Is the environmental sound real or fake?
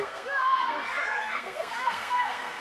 fake